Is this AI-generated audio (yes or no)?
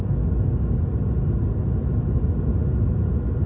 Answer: no